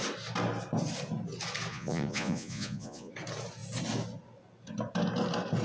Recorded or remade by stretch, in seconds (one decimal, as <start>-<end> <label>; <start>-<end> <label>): 0.0-1.7 recorded; 1.7-3.1 remade; 3.1-5.6 recorded